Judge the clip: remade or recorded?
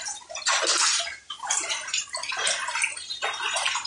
recorded